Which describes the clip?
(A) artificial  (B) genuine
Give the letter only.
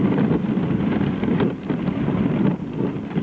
B